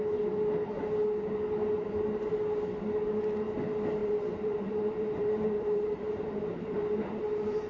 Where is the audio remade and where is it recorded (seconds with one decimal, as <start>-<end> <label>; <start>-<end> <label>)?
0.0-4.0 recorded; 4.0-7.7 remade